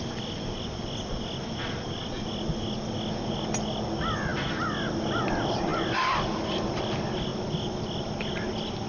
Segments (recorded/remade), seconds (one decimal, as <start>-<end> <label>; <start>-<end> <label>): 0.0-8.9 recorded